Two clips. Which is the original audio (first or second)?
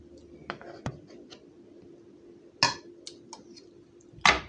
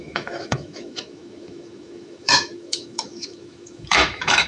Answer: first